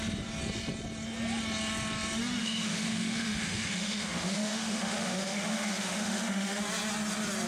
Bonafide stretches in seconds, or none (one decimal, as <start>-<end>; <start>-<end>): 0.0-2.4; 6.6-7.5